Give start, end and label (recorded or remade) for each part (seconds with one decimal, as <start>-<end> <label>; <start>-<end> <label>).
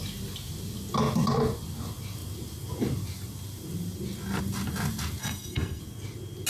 0.0-5.2 recorded; 5.2-5.8 remade; 5.8-6.5 recorded